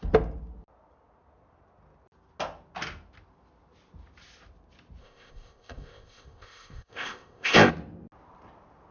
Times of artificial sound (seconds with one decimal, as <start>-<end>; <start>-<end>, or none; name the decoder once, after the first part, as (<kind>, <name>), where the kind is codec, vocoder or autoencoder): 5.0-7.7 (codec, ZipCodec)